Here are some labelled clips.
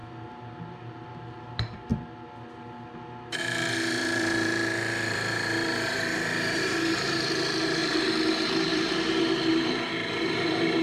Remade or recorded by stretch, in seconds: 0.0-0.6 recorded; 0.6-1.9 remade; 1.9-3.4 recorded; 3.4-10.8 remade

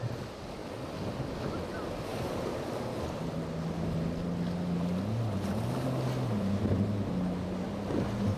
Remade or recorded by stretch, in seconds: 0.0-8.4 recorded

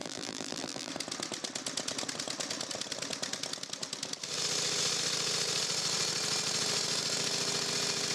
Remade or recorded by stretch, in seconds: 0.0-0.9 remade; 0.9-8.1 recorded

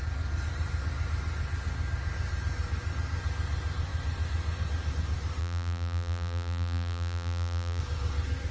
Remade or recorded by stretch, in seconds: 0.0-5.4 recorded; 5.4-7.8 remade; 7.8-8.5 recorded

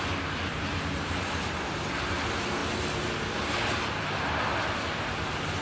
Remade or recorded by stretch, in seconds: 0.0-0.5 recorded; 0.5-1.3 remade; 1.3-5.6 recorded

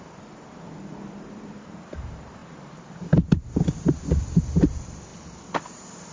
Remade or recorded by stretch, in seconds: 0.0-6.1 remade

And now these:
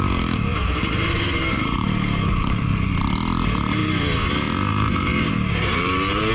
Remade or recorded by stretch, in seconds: 0.0-0.5 recorded; 0.5-2.9 remade; 2.9-3.8 recorded; 3.8-4.3 remade; 4.3-4.7 recorded; 4.7-6.3 remade

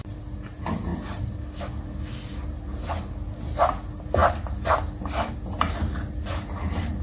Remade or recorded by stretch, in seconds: 0.0-7.0 recorded